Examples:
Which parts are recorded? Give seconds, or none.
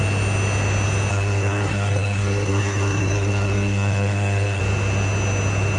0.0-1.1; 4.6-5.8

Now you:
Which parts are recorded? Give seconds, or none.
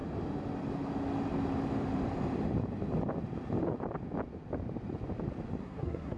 0.0-5.6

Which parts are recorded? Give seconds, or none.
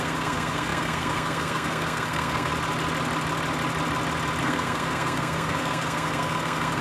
2.5-4.4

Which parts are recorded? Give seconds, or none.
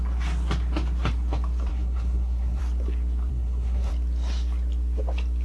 0.0-1.7; 2.6-3.3; 3.9-5.4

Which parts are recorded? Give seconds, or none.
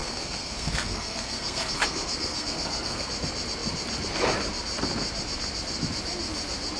3.1-6.8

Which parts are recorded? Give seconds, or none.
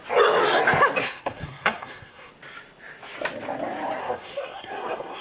0.0-1.0; 2.3-4.0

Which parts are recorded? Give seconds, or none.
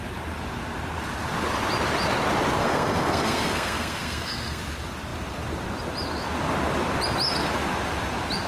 0.0-2.6; 4.6-8.5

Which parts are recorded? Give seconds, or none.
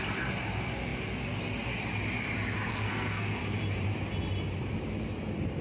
0.0-2.7; 3.4-5.6